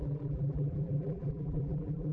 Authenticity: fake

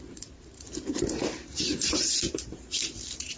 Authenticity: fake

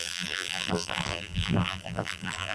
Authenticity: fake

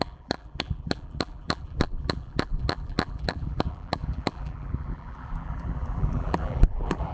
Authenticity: fake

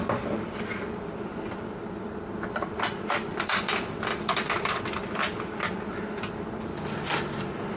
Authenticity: fake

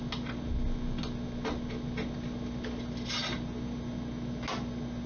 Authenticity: real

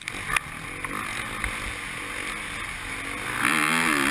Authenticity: real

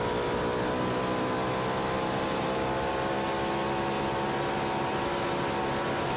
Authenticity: real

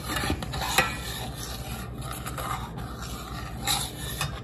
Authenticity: real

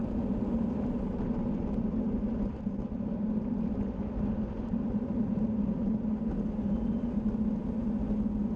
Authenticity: real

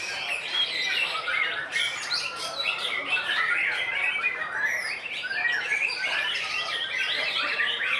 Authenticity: fake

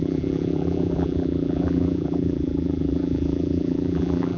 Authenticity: fake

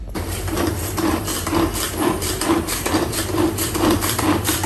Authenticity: fake